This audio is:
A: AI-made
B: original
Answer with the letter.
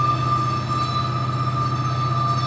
B